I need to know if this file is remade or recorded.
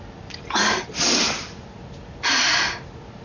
recorded